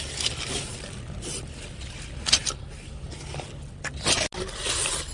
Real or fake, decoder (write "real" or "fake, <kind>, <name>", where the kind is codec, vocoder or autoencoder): real